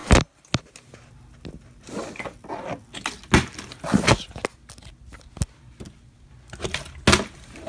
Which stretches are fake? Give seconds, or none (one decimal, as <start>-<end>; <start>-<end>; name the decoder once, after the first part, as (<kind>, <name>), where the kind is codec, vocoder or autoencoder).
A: none